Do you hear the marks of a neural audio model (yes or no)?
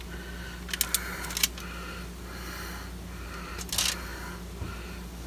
no